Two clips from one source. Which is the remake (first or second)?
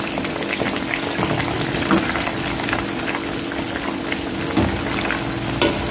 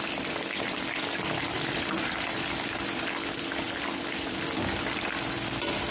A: second